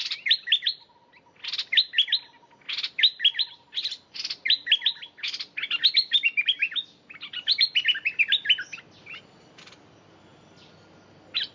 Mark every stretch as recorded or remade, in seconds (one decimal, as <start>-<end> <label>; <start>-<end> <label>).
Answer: 0.0-11.5 recorded